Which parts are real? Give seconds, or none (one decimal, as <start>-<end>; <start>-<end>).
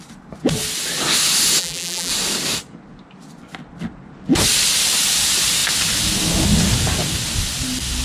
0.0-1.6; 2.1-8.0